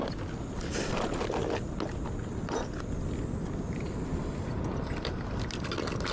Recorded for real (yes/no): yes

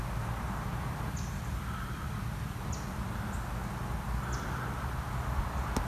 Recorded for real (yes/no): yes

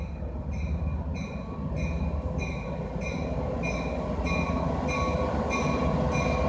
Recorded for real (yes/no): yes